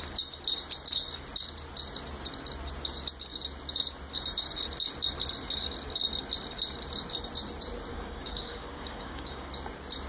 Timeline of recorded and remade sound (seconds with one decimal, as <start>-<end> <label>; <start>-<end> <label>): 0.0-7.9 recorded; 7.9-9.5 remade; 9.5-10.1 recorded